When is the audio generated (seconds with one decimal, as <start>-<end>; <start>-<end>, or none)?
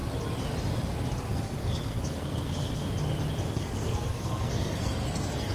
1.3-2.8; 3.5-5.5